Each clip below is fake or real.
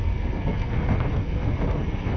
fake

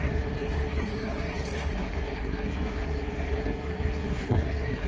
fake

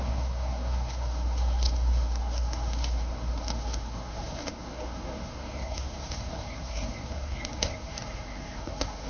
fake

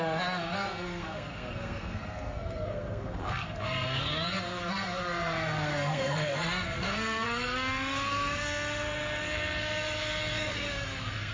fake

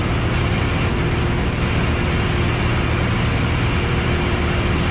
real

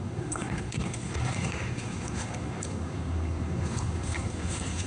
fake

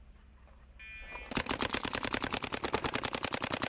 real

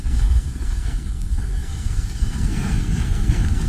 fake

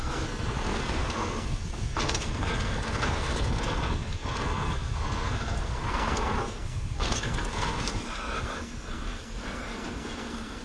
fake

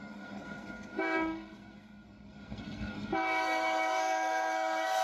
fake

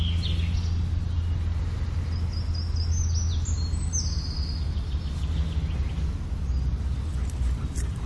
real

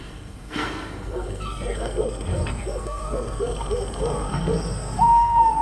fake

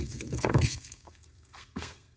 fake